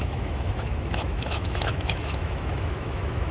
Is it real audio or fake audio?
fake